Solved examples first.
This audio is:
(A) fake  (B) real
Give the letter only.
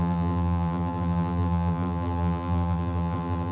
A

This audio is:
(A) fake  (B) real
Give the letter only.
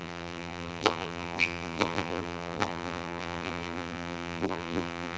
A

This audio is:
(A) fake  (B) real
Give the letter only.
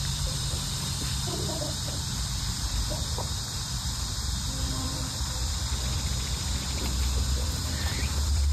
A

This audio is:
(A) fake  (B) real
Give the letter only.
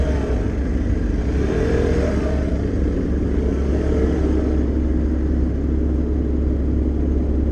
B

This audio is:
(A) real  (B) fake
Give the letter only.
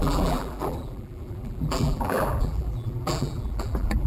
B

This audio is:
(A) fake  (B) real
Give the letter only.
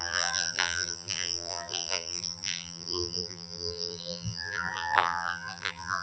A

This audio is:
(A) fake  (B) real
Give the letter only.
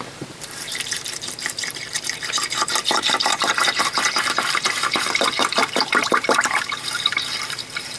A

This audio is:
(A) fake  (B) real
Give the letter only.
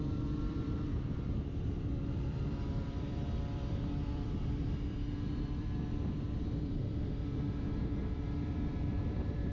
A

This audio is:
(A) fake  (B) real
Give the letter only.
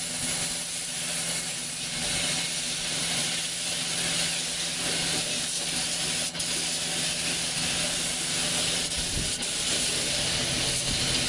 B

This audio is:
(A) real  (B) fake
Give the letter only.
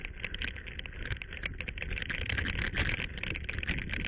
A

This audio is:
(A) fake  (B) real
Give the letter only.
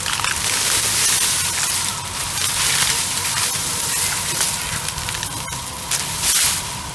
B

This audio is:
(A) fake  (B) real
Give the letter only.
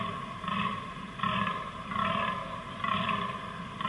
A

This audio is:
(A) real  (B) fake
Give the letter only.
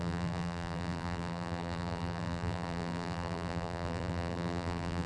B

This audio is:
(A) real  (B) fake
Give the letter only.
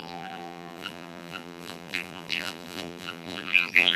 B